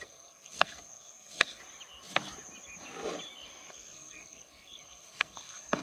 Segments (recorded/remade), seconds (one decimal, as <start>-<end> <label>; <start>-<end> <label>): 0.0-1.6 remade; 1.6-3.7 recorded; 3.7-5.8 remade